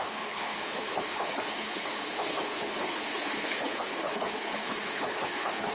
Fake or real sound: fake